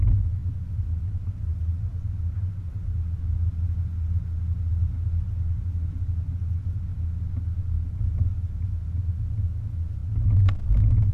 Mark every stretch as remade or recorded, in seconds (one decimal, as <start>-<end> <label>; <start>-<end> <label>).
0.0-11.1 recorded